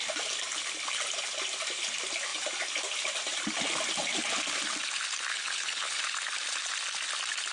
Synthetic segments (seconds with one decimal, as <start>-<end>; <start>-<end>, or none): 5.3-6.0